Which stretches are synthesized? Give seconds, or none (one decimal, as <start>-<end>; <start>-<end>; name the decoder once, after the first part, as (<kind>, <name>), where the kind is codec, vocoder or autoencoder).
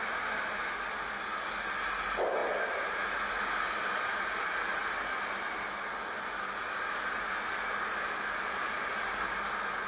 none